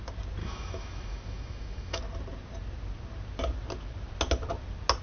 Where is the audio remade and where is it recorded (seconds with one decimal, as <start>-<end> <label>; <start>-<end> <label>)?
0.0-0.4 recorded; 0.4-2.0 remade; 2.0-5.0 recorded